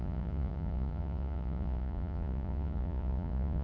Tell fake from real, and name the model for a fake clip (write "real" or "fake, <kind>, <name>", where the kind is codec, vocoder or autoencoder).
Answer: fake, vocoder, Vocos